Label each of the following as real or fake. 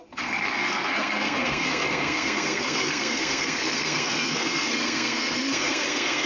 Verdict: fake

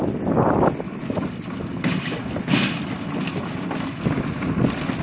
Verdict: real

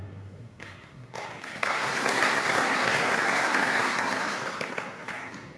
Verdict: fake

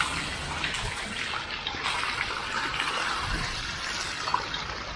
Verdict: real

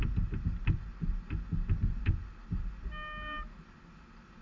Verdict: real